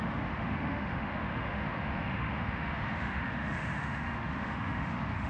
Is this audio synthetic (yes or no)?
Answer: yes